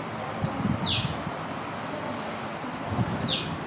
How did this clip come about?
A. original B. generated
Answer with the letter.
A